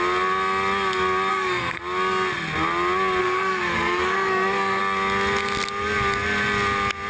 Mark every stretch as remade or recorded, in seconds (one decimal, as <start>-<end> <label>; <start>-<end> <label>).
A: 0.0-1.3 recorded; 1.3-1.8 remade; 1.8-3.2 recorded; 3.2-4.8 remade; 4.8-7.1 recorded